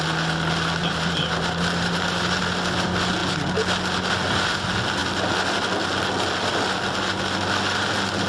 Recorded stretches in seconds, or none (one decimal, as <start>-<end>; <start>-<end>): 0.0-0.8; 2.4-8.3